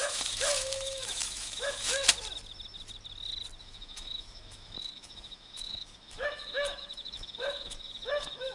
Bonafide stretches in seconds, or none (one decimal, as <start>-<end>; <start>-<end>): 2.0-3.6